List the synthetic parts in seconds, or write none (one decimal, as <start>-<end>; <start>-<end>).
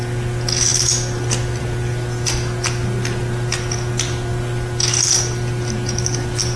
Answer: none